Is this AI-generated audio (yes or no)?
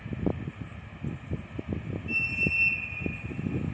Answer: no